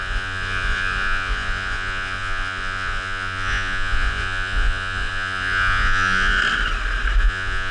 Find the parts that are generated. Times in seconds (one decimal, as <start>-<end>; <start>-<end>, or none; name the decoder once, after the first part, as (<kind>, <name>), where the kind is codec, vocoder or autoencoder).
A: 0.0-6.4 (vocoder, Vocos); 7.2-7.7